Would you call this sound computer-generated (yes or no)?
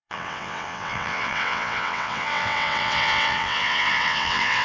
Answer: yes